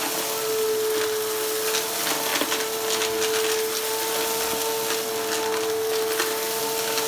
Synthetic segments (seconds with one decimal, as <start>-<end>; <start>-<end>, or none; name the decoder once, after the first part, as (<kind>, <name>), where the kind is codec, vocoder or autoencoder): none

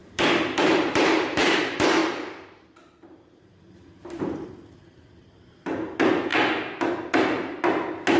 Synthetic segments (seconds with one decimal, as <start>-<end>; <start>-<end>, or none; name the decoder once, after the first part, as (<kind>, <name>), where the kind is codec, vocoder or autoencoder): 0.0-1.6 (vocoder, BigVGAN v2); 2.0-4.2